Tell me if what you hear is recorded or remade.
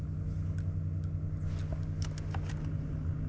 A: recorded